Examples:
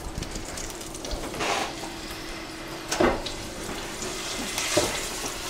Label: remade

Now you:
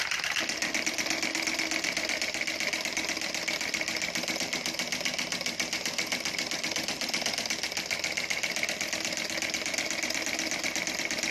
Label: remade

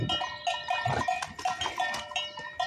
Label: recorded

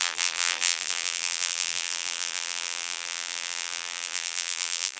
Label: remade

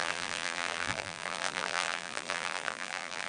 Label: remade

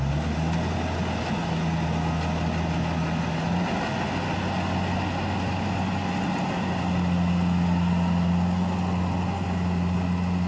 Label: recorded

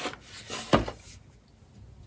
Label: recorded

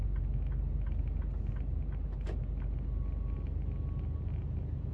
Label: recorded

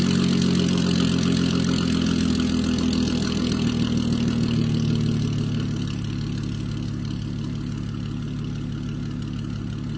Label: recorded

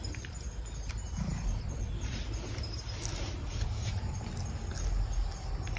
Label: recorded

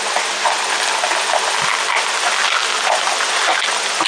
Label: recorded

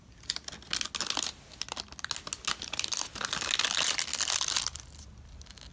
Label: recorded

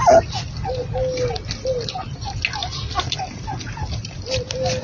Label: recorded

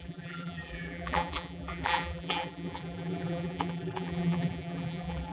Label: remade